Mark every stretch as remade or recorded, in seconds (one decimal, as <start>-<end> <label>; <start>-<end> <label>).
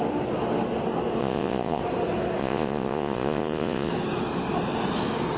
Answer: 0.0-1.2 recorded; 1.2-1.8 remade; 1.8-2.4 recorded; 2.4-3.9 remade; 3.9-5.4 recorded